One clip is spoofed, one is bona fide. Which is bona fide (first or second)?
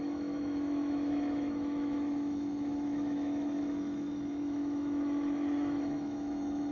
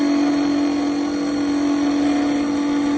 second